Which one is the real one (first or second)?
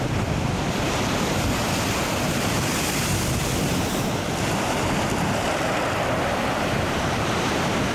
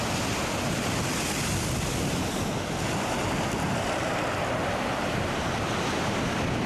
second